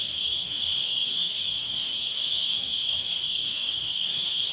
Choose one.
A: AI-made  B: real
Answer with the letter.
A